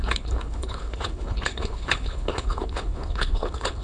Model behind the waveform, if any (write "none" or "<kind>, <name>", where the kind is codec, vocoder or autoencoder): codec, HILCodec